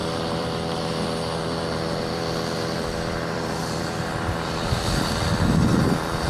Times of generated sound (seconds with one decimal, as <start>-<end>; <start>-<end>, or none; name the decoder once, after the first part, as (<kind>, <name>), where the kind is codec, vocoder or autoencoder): 0.0-6.3 (vocoder, BigVGAN v2)